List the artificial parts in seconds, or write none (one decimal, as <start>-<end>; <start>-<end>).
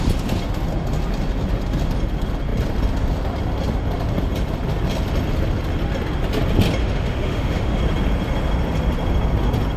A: 6.8-7.8